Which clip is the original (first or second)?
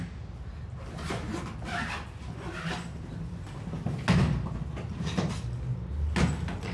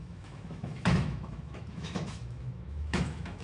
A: first